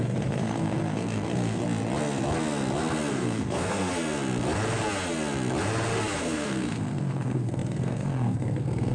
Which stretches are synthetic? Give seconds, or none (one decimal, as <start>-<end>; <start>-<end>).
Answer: 0.0-1.6; 3.1-3.9; 6.2-8.9